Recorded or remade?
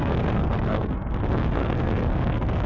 remade